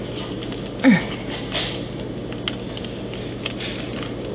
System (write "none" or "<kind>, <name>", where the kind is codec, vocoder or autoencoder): none